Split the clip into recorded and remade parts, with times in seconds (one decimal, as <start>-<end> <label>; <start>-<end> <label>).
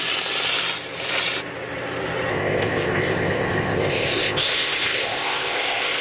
0.0-2.3 recorded; 2.3-6.0 remade